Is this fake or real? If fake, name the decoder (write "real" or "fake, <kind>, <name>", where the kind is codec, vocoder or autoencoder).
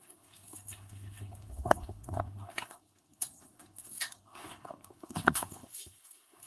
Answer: fake, codec, SNAC